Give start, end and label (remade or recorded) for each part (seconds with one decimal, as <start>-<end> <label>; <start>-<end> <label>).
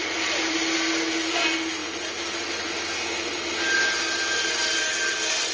0.0-5.5 recorded